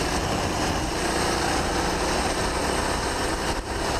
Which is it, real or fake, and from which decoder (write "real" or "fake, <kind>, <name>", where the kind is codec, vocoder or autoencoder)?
real